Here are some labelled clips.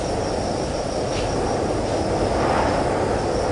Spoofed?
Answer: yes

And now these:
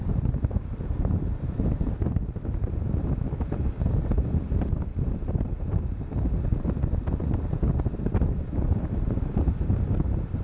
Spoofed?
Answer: yes